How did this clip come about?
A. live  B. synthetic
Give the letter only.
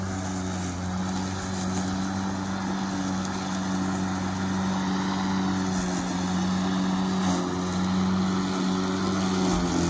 A